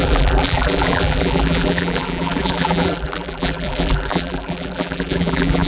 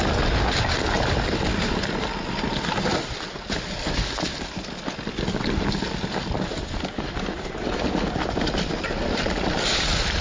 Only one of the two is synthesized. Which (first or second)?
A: first